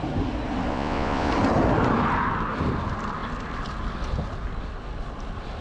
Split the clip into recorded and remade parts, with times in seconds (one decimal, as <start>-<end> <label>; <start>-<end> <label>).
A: 0.0-0.7 recorded; 0.7-1.3 remade; 1.3-5.6 recorded